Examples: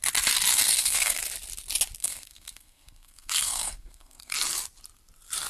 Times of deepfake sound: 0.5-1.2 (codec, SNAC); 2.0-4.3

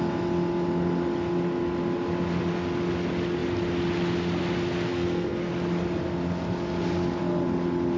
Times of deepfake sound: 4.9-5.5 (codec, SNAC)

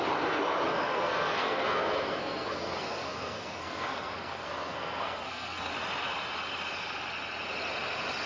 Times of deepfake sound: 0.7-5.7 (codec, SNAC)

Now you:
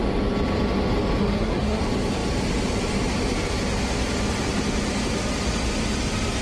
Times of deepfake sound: 1.2-1.8 (codec, SNAC)

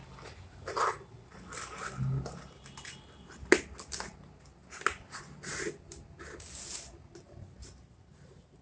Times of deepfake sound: none